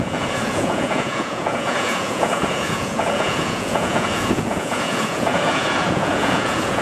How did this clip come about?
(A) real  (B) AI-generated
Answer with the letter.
B